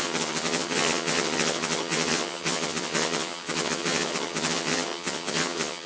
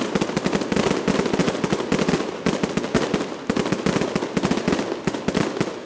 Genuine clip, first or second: second